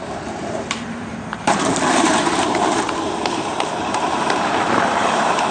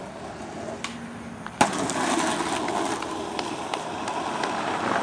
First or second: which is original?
second